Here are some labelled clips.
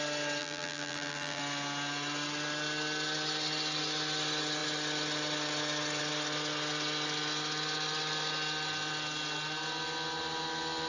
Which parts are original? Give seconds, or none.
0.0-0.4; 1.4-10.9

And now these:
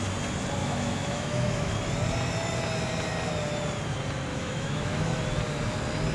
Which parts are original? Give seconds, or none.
0.0-0.6; 1.7-4.3; 5.2-6.1

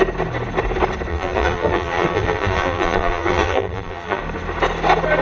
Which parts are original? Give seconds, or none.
0.0-1.1; 4.2-5.2

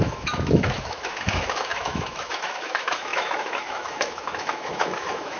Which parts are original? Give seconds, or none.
none

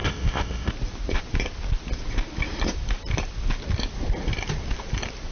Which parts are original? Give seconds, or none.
0.7-5.3

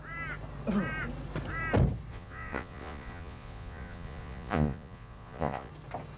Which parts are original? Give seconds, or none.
0.0-2.1; 5.7-6.2

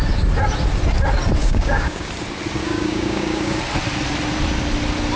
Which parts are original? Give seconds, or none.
0.0-1.4; 2.1-2.6; 3.6-5.2

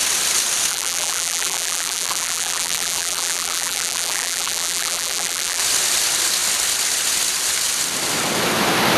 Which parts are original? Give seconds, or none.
0.0-0.7; 5.6-9.0